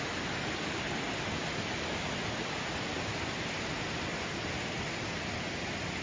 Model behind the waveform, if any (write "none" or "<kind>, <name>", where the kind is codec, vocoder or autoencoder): none